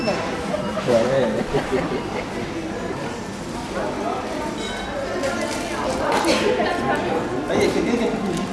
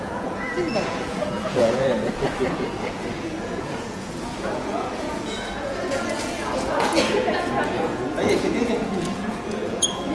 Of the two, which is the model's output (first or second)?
second